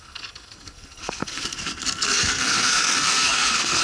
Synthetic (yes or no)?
yes